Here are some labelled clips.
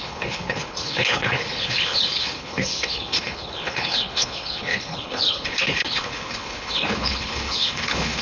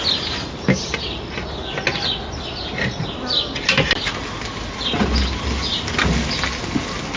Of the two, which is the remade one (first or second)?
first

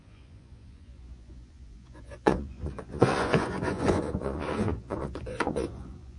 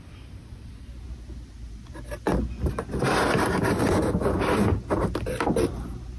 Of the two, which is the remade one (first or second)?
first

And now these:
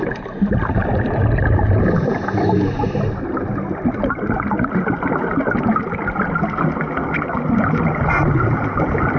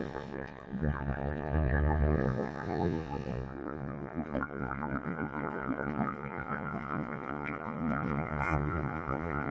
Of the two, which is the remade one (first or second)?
second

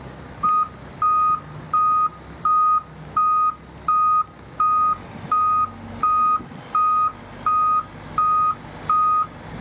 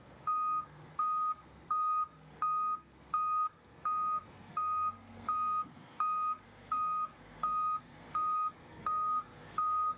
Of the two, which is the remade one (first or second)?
second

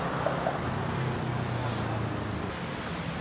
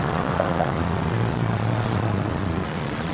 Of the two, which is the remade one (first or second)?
second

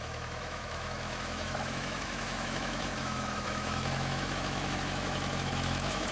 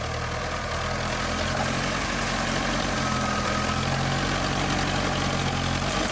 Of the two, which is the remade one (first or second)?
first